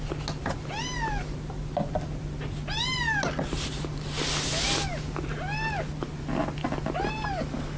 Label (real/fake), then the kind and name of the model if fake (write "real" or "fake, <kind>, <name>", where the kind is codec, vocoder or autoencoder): real